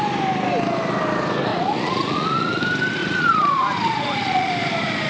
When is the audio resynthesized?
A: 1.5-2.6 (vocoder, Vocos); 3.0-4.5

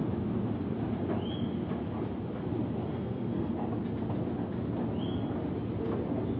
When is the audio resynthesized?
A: 2.9-3.5 (codec, SNAC)